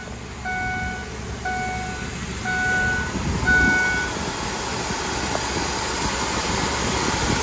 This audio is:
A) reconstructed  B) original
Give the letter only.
B